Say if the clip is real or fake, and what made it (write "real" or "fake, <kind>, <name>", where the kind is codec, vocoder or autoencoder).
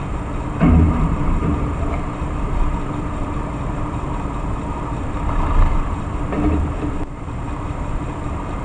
fake, vocoder, BigVGAN v2